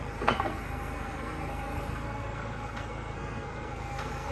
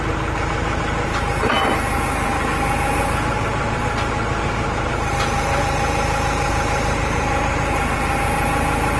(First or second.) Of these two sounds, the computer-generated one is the first